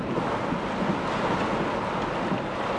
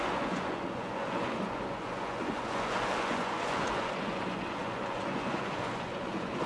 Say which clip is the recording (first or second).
first